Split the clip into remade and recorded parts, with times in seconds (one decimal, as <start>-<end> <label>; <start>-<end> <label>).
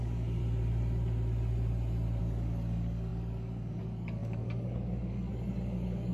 0.0-0.4 remade; 0.4-2.2 recorded; 2.2-6.1 remade